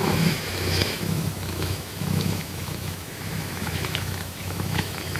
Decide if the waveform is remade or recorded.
remade